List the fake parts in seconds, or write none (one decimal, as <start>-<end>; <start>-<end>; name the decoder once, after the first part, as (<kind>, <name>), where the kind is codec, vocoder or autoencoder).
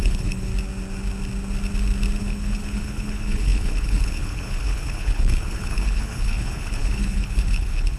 0.0-0.5 (codec, HILCodec); 2.2-8.0